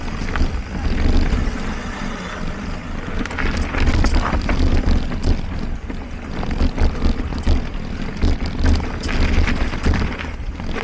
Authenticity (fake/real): real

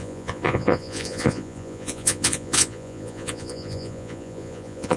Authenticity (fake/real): fake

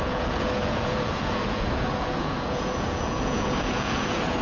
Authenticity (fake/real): fake